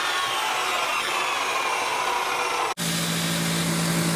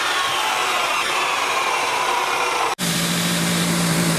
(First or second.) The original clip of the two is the first